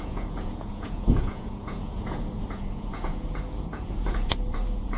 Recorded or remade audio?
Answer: remade